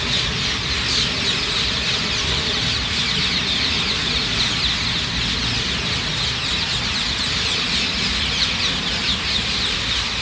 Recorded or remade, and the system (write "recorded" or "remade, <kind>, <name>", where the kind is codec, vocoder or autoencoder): recorded